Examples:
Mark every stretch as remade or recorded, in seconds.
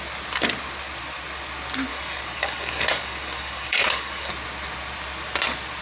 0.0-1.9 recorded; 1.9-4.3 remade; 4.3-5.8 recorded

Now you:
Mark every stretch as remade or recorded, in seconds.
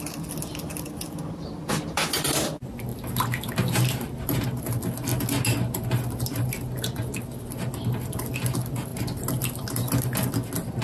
0.0-10.8 recorded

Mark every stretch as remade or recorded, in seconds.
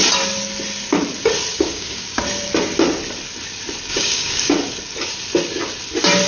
0.0-1.5 recorded; 1.5-2.2 remade; 2.2-3.9 recorded; 3.9-4.5 remade; 4.5-6.3 recorded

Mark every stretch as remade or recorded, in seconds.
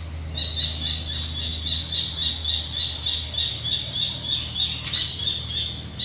0.0-6.0 recorded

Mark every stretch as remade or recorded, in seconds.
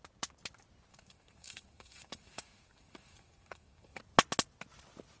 0.0-0.9 recorded; 0.9-4.0 remade; 4.0-5.2 recorded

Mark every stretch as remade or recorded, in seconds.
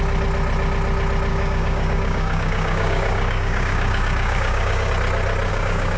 0.0-1.3 recorded; 1.3-4.9 remade; 4.9-5.5 recorded; 5.5-6.0 remade